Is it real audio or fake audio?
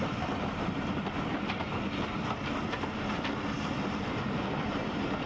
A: real